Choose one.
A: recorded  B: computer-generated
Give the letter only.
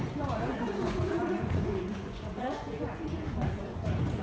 B